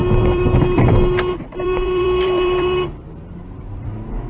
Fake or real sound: fake